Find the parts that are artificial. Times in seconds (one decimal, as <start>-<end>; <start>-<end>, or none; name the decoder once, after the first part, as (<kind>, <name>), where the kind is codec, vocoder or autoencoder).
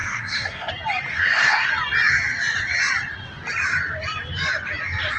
0.0-0.7 (codec, SNAC); 1.1-1.7